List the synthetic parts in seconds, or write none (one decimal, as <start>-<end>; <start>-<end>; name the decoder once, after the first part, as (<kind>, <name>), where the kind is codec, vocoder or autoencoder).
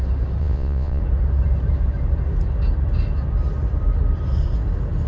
0.4-1.0 (vocoder, Vocos)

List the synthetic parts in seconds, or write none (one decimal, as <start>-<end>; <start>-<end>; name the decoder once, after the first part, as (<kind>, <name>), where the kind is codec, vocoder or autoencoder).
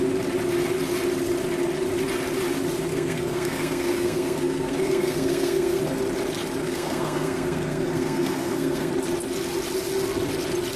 2.9-5.8 (codec, SNAC); 6.6-8.9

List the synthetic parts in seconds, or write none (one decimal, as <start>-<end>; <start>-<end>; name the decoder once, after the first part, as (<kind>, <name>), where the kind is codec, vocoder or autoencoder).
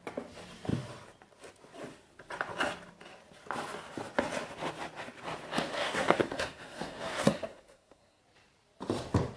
5.7-8.2 (codec, SNAC)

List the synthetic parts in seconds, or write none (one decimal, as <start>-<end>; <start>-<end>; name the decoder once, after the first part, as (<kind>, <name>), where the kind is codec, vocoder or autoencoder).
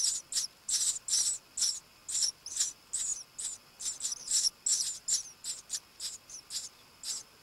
none